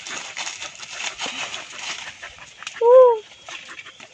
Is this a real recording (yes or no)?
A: yes